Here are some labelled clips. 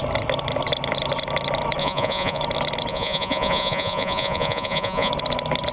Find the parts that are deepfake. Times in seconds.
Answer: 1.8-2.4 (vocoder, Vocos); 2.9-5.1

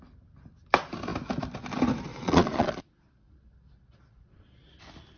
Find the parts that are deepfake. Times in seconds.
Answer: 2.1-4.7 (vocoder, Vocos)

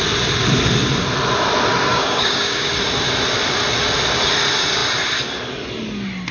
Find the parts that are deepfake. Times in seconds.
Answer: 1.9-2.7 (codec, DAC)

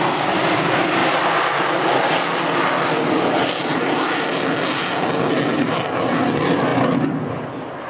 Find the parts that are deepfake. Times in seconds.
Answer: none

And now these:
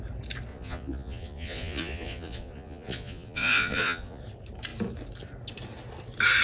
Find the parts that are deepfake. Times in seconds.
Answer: 0.5-4.2 (vocoder, Vocos)

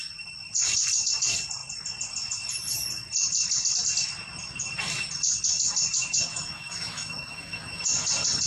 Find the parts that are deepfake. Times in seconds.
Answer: 6.3-7.8 (autoencoder, DAC-VAE)

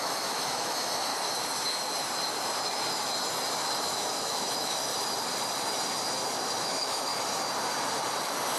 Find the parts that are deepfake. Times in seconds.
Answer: 0.0-1.1 (autoencoder, DAC-VAE); 3.8-4.9; 6.6-7.1